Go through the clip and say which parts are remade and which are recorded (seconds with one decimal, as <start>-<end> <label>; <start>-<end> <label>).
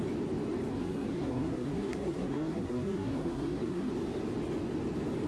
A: 0.0-0.7 recorded; 0.7-3.9 remade; 3.9-5.3 recorded